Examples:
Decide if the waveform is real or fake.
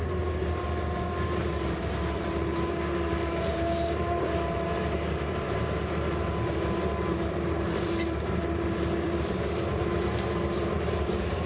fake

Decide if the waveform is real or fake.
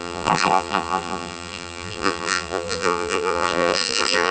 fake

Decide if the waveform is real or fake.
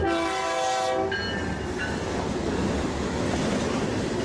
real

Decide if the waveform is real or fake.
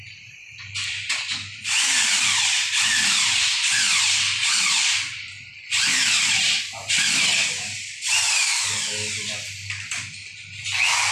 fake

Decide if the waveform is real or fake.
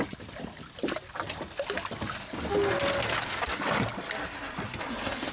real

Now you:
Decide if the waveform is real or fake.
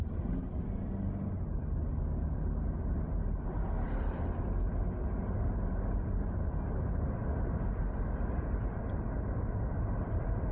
real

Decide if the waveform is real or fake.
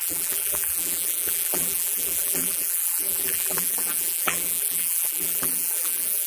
fake